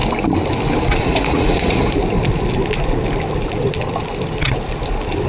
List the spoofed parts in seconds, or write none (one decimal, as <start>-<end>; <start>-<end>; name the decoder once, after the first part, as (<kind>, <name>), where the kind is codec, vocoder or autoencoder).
0.9-1.8 (vocoder, Vocos)